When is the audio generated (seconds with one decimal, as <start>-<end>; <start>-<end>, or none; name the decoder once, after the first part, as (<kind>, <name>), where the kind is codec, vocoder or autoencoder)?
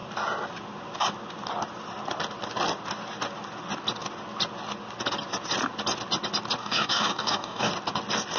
6.6-7.7 (codec, DAC)